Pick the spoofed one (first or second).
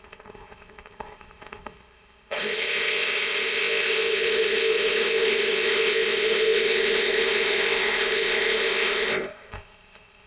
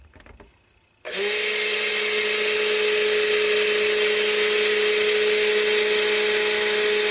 first